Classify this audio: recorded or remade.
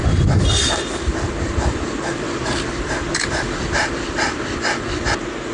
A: remade